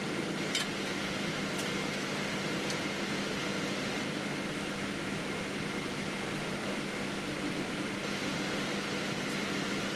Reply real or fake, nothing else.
real